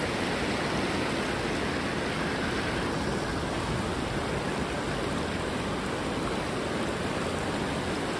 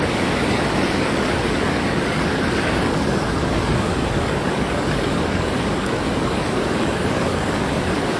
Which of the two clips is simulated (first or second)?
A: second